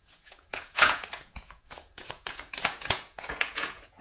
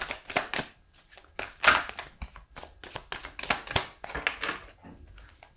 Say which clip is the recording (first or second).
second